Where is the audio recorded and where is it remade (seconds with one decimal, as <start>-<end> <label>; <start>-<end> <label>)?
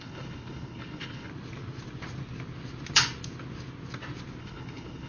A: 0.0-1.3 remade; 1.3-4.4 recorded; 4.4-5.1 remade